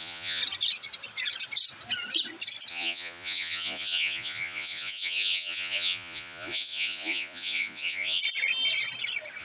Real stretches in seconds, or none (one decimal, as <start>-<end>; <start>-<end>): 0.4-2.7; 8.2-9.4